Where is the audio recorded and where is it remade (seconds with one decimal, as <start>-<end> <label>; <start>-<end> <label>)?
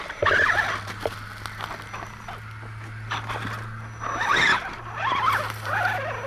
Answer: 0.0-4.3 recorded; 4.3-5.7 remade; 5.7-6.3 recorded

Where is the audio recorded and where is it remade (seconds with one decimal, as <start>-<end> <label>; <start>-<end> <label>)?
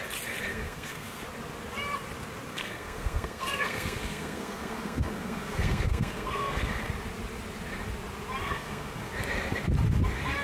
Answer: 0.0-0.5 recorded; 0.5-1.2 remade; 1.2-2.5 recorded; 2.5-6.9 remade; 6.9-8.4 recorded; 8.4-9.1 remade; 9.1-10.4 recorded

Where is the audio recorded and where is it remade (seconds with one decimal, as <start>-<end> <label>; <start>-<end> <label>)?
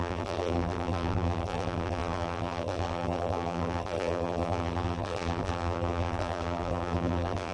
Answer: 0.0-7.5 remade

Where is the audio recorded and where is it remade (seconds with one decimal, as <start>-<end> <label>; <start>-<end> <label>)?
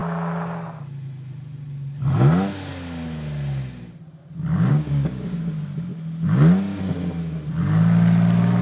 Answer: 0.0-4.7 recorded; 4.7-5.4 remade; 5.4-8.6 recorded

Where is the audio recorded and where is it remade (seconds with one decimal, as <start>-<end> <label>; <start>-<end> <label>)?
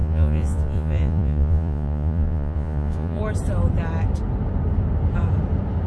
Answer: 0.0-3.2 remade; 3.2-5.9 recorded